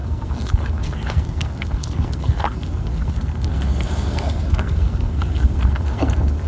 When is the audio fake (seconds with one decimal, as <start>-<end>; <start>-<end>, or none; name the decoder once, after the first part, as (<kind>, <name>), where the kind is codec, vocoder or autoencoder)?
0.0-6.5 (codec, SNAC)